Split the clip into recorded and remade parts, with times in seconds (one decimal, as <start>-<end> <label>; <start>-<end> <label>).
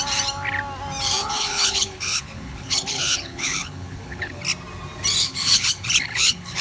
0.0-1.2 recorded; 1.2-4.4 remade; 4.4-5.2 recorded; 5.2-6.6 remade